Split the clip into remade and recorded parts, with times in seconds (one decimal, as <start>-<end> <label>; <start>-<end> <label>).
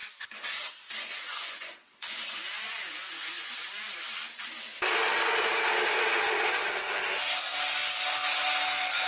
0.0-3.8 remade; 3.8-9.1 recorded